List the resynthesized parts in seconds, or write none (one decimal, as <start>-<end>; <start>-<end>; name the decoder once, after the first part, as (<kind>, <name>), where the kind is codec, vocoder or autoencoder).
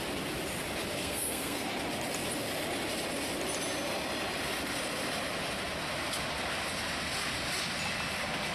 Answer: 1.0-1.7 (codec, SNAC)